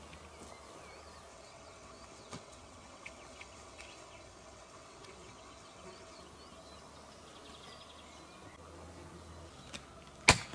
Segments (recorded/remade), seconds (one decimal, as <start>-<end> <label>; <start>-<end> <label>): 0.0-1.3 recorded; 1.3-6.2 remade; 6.2-10.5 recorded